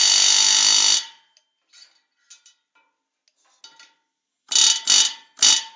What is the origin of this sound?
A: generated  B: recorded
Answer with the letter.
B